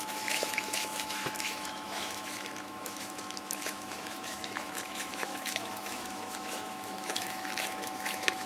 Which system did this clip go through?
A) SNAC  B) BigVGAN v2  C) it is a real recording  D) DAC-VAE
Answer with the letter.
D